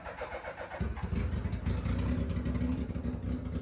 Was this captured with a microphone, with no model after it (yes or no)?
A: yes